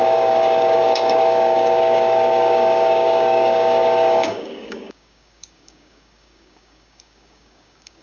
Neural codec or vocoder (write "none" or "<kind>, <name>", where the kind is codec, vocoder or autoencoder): codec, DAC